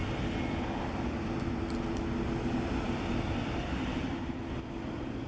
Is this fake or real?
real